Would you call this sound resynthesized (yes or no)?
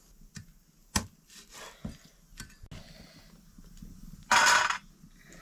no